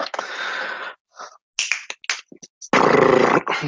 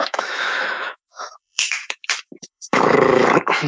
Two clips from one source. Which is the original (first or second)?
first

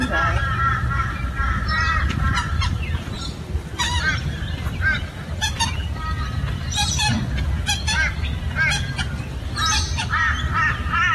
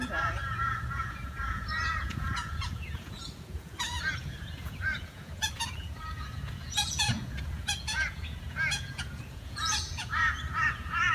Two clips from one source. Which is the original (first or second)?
first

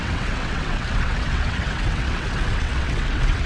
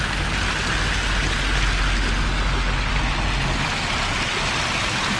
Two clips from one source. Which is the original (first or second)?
second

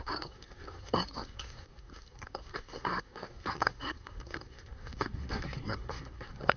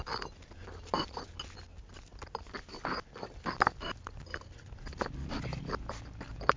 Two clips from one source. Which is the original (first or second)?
second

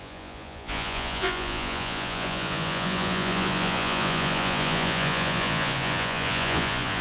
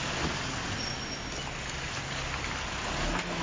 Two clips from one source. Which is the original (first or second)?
second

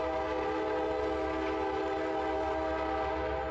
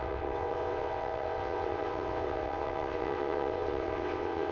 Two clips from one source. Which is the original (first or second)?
first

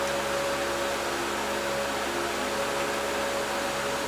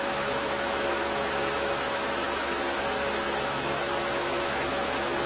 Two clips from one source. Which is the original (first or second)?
first